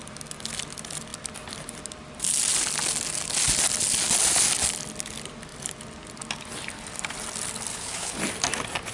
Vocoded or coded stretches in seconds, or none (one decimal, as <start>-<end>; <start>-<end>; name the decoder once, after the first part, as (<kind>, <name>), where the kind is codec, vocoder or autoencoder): 7.7-8.2 (codec, HILCodec)